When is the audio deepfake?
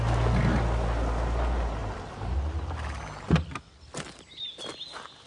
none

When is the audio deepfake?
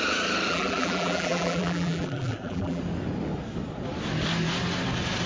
0.5-2.8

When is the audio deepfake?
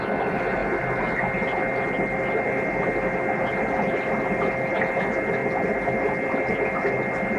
none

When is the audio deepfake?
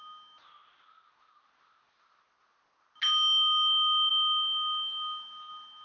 none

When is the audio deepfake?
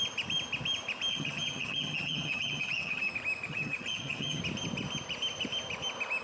1.1-3.1; 3.5-4.4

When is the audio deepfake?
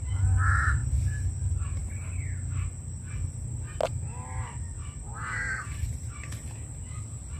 none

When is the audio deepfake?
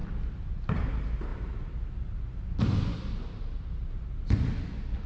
none